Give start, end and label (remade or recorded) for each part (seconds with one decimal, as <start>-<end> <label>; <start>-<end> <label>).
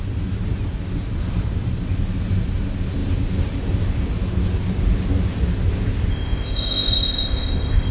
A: 0.0-6.1 recorded; 6.1-7.9 remade